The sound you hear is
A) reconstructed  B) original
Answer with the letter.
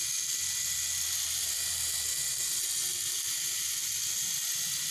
B